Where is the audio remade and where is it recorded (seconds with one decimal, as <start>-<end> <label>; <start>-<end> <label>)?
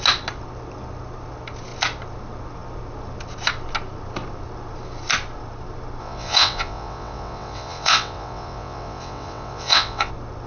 0.0-6.0 recorded; 6.0-10.1 remade; 10.1-10.5 recorded